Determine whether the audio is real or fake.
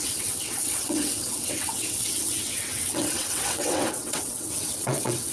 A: fake